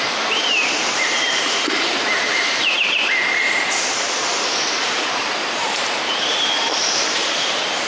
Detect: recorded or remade remade